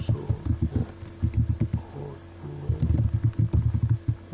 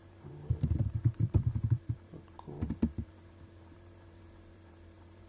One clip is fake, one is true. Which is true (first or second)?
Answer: first